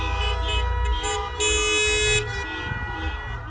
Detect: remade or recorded recorded